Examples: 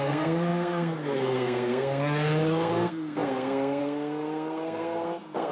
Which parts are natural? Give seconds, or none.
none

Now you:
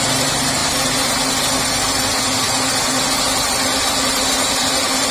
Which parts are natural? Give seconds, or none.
0.0-5.1

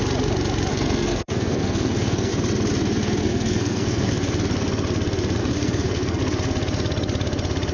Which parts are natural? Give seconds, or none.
0.0-0.7; 2.3-3.2; 4.1-5.4; 6.2-7.7

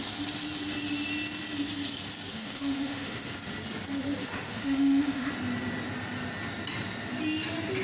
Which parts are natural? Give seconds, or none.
0.0-2.3; 3.3-4.2; 5.3-7.8

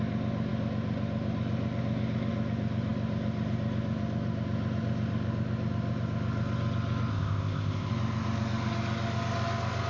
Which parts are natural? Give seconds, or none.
0.0-7.1; 7.9-9.9

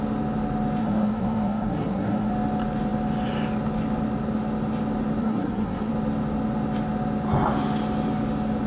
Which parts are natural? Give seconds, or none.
0.0-0.8; 2.3-5.2; 5.9-8.7

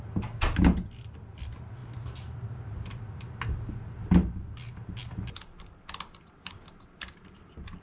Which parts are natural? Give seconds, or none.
0.0-7.8

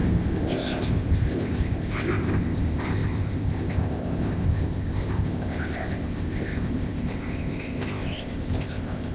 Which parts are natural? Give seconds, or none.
none